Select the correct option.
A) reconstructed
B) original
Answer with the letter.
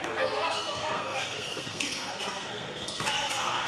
A